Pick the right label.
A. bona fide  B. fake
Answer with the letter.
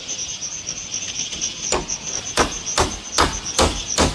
A